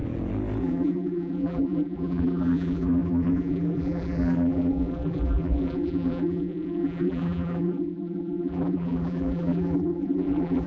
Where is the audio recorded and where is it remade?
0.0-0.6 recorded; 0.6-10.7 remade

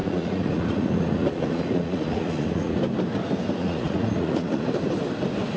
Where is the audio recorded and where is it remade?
0.0-2.8 remade; 2.8-3.6 recorded; 3.6-4.7 remade; 4.7-5.6 recorded

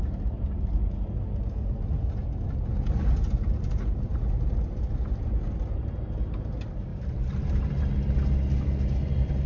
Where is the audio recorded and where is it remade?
0.0-4.1 recorded; 4.1-4.7 remade; 4.7-6.9 recorded; 6.9-7.7 remade; 7.7-9.5 recorded

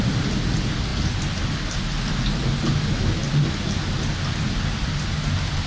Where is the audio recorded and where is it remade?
0.0-5.7 recorded

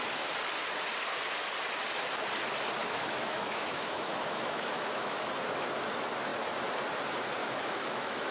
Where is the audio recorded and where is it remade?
0.0-2.8 recorded; 2.8-5.3 remade; 5.3-7.4 recorded; 7.4-8.3 remade

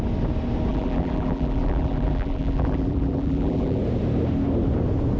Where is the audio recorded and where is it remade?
0.0-0.7 recorded; 0.7-3.8 remade; 3.8-5.2 recorded

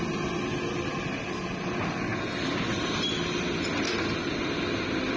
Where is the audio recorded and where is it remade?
0.0-5.2 recorded